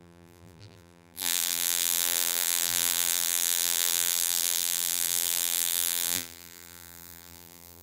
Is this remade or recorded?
remade